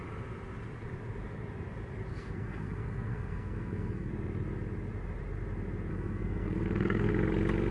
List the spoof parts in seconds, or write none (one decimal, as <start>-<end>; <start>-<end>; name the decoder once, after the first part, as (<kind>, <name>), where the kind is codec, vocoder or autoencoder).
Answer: 2.1-4.1 (codec, SNAC); 5.9-7.1